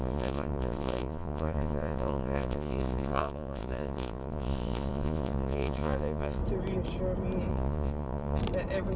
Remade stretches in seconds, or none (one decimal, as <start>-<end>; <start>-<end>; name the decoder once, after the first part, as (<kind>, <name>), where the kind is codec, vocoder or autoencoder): 0.0-6.4 (vocoder, Vocos); 7.5-8.4